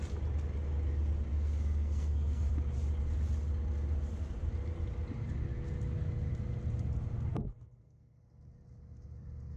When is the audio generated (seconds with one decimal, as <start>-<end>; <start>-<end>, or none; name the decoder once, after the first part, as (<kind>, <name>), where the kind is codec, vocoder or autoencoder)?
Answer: 1.3-2.5 (codec, SNAC); 7.3-8.2